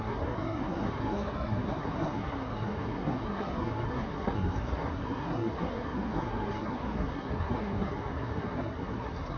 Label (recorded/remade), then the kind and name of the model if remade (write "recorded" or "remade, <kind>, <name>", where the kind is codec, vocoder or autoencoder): remade, codec, SNAC